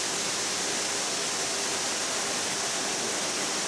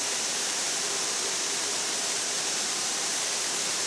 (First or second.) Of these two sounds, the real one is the first